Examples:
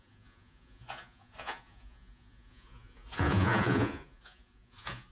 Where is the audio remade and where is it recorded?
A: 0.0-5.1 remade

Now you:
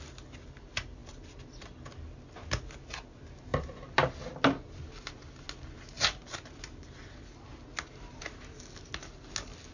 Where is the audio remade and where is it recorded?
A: 0.0-9.7 recorded

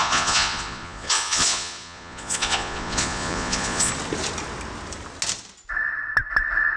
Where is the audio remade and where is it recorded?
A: 0.0-3.9 remade; 3.9-6.8 recorded